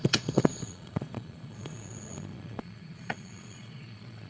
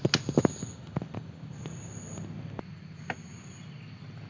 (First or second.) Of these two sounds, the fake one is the first